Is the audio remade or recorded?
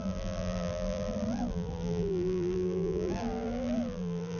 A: remade